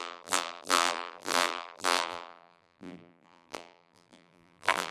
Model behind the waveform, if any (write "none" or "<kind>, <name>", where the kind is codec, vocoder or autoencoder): vocoder, BigVGAN v2